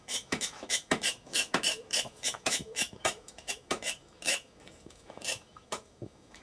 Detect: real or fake fake